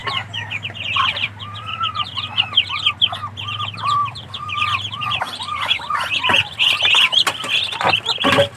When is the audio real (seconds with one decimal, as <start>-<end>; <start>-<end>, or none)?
2.9-4.0; 7.5-8.6